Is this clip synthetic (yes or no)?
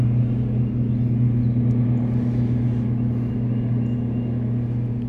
no